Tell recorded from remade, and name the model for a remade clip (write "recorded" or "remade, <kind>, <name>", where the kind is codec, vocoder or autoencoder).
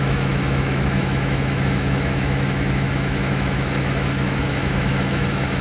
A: remade, autoencoder, DAC-VAE